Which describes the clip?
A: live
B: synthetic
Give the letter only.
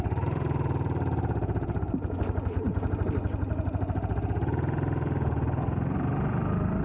B